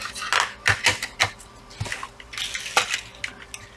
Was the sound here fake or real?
real